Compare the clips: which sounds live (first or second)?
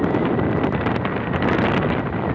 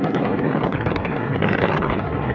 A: first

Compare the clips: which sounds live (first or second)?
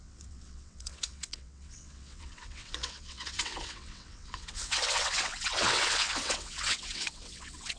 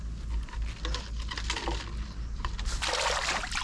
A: second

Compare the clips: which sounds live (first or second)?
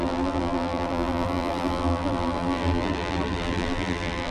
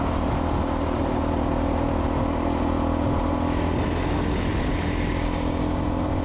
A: second